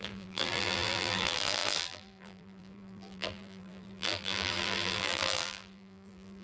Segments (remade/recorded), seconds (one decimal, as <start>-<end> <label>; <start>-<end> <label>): 0.0-6.4 remade